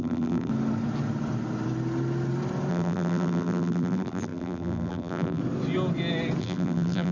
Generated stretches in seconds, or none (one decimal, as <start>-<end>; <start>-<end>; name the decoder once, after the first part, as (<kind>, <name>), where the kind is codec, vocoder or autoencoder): 0.0-0.5 (vocoder, BigVGAN v2); 2.7-5.4; 6.4-7.1